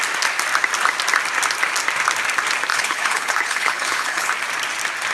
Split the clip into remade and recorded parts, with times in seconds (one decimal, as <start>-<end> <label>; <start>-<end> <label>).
0.0-2.7 recorded; 2.7-4.3 remade; 4.3-5.1 recorded